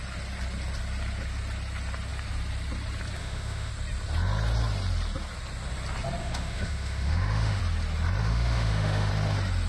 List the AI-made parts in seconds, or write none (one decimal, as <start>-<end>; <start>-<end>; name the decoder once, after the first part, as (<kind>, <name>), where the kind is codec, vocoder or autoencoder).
3.2-3.7 (autoencoder, DAC-VAE); 6.2-7.6; 8.2-9.1